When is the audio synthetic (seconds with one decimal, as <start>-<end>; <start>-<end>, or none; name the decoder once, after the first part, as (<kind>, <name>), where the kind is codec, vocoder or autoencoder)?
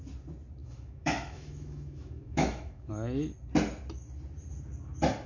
0.6-2.9 (autoencoder, DAC-VAE)